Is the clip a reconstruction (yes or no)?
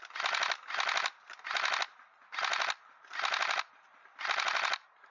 no